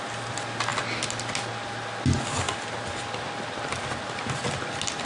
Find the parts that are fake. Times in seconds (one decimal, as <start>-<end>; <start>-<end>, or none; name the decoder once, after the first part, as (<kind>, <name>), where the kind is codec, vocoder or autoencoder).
none